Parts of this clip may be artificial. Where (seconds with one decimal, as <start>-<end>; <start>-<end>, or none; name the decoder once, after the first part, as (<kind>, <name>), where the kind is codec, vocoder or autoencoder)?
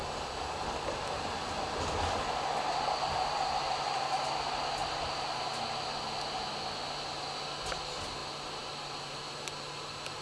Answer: none